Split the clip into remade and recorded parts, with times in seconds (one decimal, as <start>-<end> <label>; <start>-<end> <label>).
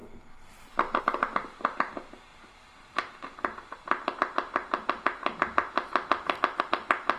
0.0-7.2 recorded